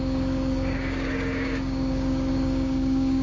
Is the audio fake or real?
fake